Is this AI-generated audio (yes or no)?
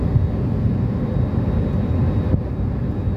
no